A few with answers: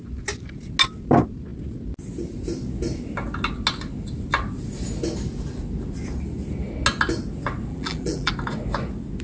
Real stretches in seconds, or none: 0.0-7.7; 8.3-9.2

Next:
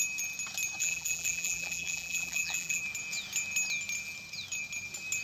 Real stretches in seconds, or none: 0.0-0.8; 2.8-5.2

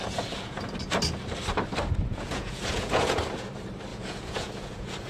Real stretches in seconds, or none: 0.6-2.1; 3.2-3.9

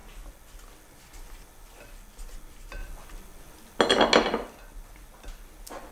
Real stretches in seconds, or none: 0.0-5.9

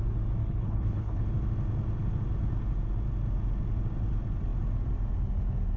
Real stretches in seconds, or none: 0.0-0.4; 1.2-5.8

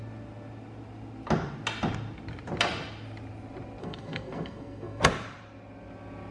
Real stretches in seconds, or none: 0.0-3.8; 5.0-6.3